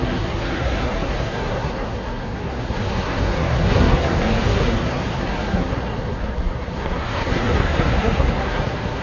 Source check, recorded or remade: remade